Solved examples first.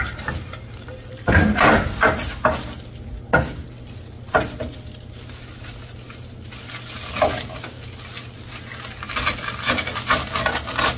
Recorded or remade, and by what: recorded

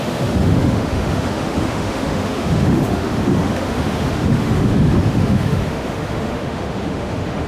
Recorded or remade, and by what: remade, autoencoder, DAC-VAE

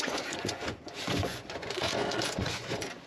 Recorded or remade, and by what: remade, vocoder, Vocos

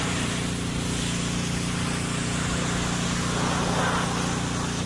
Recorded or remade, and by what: recorded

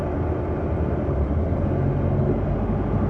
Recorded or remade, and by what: recorded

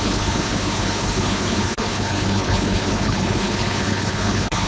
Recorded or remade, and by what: remade, codec, HILCodec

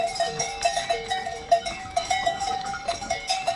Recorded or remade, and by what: remade, codec, DAC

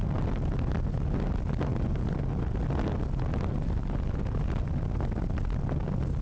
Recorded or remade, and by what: recorded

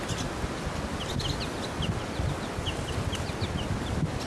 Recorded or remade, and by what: recorded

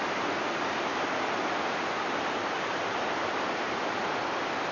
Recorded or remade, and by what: recorded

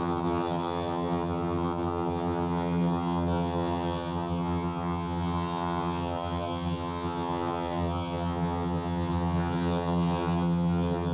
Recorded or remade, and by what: remade, vocoder, HiFi-GAN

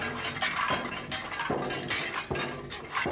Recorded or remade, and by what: recorded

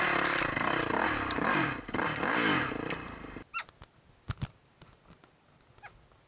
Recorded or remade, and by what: recorded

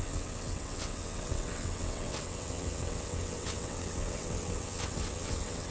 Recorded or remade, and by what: remade, vocoder, WaveNeXt